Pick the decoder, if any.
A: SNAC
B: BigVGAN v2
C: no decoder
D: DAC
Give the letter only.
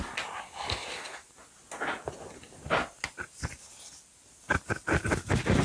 C